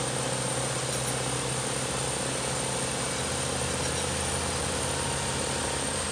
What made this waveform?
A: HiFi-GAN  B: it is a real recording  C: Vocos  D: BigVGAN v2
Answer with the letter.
B